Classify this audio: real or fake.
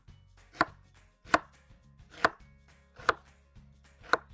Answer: real